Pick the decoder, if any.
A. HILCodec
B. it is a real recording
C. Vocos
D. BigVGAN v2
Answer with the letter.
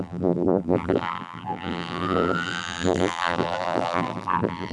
D